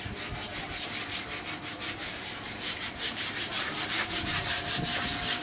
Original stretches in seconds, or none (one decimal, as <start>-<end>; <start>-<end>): 0.0-1.7; 4.8-5.4